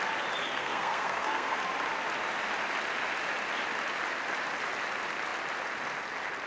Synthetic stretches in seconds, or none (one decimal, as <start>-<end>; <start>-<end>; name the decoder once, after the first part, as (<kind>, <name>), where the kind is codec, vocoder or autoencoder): 0.5-1.6 (codec, SNAC)